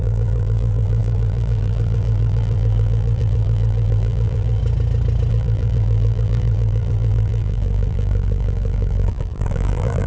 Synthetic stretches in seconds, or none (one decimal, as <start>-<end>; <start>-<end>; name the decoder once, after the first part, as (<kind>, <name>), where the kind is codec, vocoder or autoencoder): 0.0-4.6 (vocoder, BigVGAN v2); 5.3-10.1